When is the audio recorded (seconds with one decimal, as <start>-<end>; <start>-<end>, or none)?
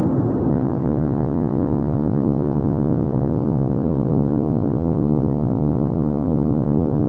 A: 0.0-0.5